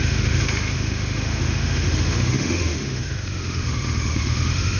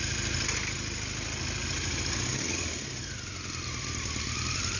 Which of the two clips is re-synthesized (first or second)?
first